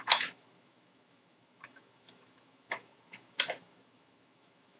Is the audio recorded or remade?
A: remade